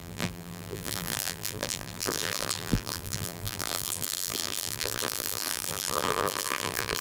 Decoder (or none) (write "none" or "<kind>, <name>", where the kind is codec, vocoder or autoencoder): vocoder, BigVGAN v2